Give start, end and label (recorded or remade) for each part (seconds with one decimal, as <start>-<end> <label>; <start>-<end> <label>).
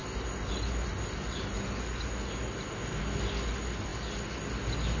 0.0-5.0 recorded